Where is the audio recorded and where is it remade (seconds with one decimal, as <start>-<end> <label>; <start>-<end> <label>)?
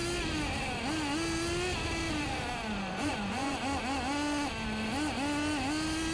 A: 0.0-2.9 recorded; 2.9-3.6 remade; 3.6-6.1 recorded